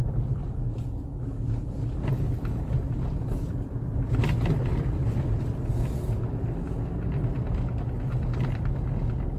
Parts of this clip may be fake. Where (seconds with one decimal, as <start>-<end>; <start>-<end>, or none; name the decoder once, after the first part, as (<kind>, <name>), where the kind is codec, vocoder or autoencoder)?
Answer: none